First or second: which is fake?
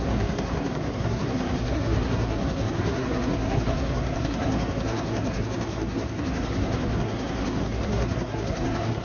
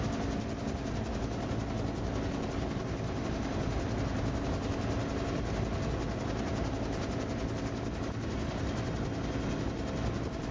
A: first